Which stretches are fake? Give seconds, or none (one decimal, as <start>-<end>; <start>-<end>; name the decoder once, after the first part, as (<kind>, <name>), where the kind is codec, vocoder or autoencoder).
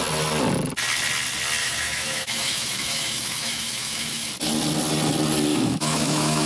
1.6-4.3 (autoencoder, DAC-VAE); 5.5-6.5